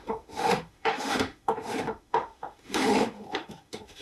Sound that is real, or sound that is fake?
fake